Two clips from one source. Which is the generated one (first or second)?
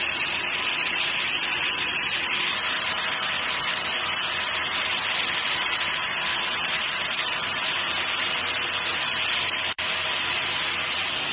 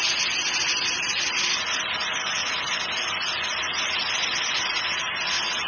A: first